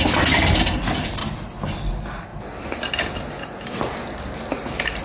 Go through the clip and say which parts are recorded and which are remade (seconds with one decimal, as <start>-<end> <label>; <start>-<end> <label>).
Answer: 0.0-5.0 recorded